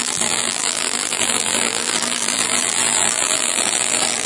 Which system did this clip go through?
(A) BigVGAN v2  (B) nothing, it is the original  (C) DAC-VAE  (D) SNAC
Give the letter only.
A